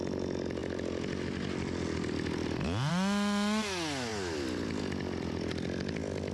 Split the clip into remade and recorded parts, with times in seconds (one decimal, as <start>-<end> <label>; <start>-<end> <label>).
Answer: 0.0-6.3 recorded